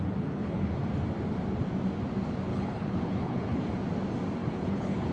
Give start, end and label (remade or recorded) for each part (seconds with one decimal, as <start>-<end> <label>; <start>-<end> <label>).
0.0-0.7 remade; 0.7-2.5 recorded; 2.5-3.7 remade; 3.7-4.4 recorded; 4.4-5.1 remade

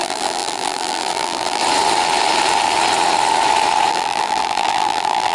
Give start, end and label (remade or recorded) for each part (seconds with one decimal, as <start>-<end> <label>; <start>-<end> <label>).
0.0-1.6 remade; 1.6-3.9 recorded; 3.9-5.3 remade

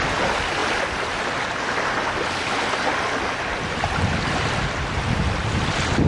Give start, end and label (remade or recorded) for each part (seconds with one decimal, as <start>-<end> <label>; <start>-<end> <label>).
0.0-6.1 recorded